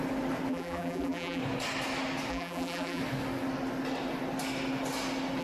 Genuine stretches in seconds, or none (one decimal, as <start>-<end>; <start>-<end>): 0.0-0.5; 1.4-2.3; 3.0-5.4